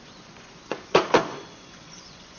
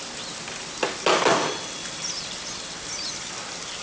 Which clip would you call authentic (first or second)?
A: second